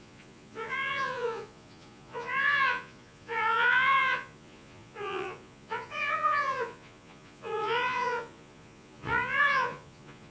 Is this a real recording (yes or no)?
no